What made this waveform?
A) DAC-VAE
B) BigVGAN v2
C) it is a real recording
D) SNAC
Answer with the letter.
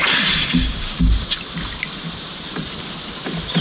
C